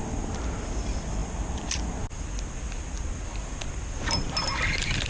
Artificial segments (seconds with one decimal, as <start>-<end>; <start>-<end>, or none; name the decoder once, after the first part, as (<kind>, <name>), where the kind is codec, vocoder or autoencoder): none